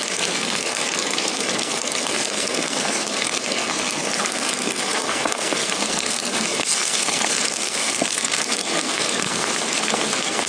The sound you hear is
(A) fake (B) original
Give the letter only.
A